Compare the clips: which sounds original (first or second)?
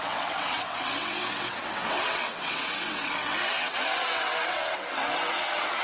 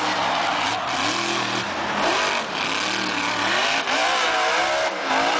second